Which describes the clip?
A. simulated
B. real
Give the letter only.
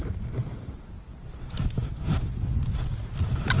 B